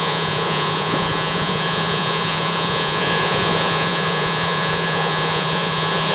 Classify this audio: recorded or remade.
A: remade